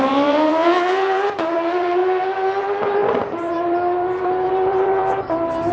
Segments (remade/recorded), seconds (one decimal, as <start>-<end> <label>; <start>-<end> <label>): 0.0-2.0 remade; 2.0-2.6 recorded; 2.6-5.7 remade